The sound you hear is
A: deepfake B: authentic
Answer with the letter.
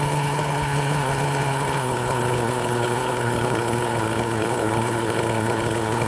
A